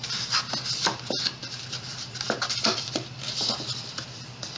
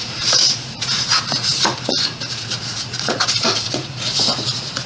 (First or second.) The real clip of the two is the first